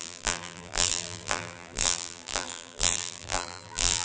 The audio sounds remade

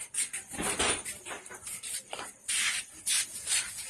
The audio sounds remade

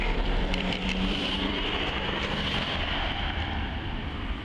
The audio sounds remade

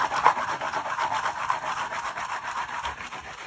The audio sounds recorded